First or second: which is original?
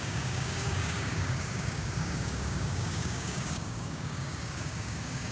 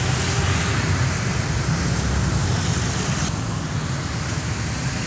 second